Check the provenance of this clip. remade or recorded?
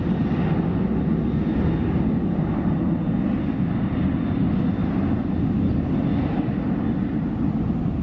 recorded